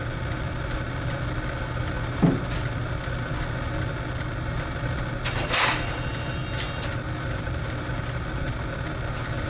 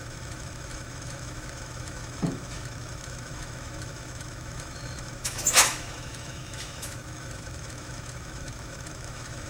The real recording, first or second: first